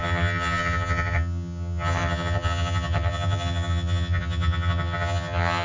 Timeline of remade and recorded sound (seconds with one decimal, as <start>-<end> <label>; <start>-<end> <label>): 0.0-5.6 remade